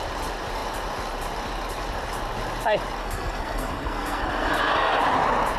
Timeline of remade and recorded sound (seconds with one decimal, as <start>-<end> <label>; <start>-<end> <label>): 0.0-3.0 recorded; 3.0-5.0 remade; 5.0-5.6 recorded